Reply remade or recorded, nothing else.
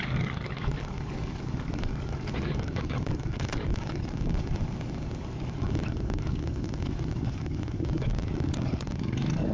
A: remade